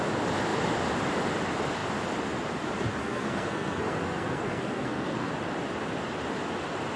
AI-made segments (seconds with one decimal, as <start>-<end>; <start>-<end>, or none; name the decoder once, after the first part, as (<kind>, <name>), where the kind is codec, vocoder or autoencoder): 3.0-5.3 (codec, SNAC)